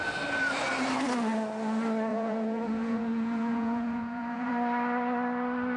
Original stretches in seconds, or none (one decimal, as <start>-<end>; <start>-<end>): 0.0-2.1; 4.5-5.8